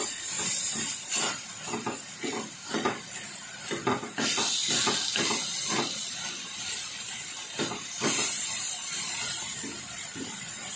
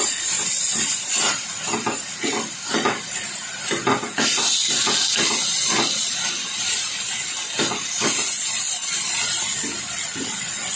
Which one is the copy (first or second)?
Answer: first